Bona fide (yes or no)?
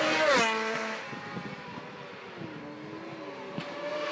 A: yes